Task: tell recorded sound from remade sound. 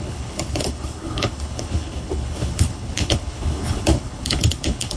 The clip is remade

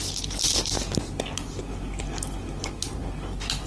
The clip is recorded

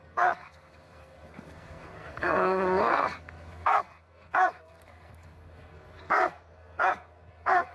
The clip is remade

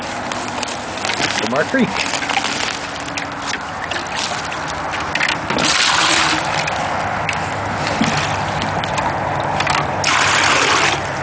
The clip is recorded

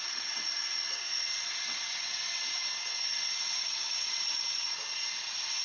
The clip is remade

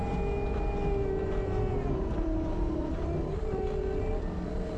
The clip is remade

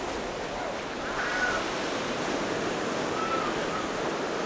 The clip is recorded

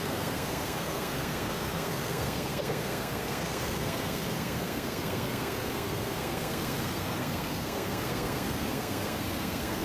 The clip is remade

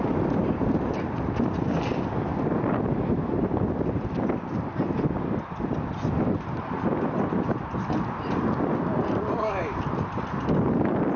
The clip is recorded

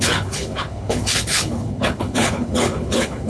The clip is remade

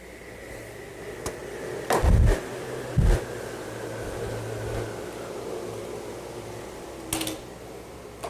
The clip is recorded